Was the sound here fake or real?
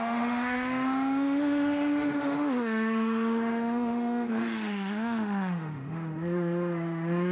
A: fake